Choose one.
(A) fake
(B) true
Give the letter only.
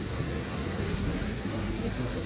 A